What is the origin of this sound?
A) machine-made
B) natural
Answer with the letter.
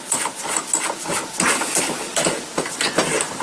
B